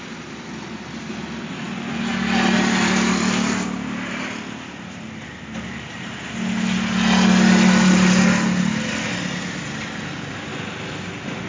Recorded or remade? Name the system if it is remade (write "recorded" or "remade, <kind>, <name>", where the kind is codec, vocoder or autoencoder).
recorded